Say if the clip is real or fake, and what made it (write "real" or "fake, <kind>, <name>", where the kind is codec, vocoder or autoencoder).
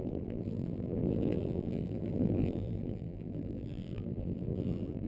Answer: fake, vocoder, BigVGAN v2